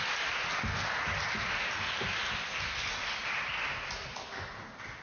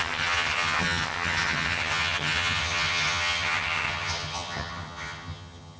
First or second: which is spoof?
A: second